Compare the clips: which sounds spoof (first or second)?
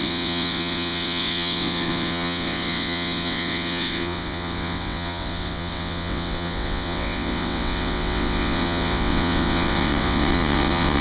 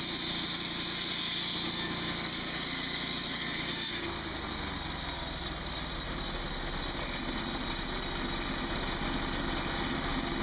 first